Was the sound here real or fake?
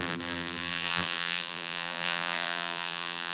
fake